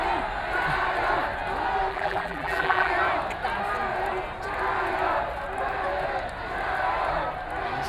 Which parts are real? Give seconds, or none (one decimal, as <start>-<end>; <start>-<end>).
0.0-1.9; 2.9-7.9